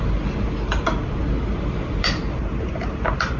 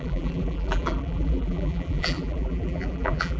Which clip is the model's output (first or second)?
second